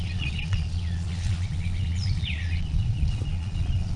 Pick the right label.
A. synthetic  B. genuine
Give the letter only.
A